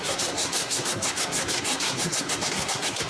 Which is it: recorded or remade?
remade